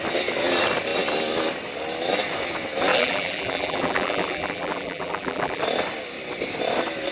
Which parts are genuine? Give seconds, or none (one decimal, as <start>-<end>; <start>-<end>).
0.0-2.9; 5.6-7.1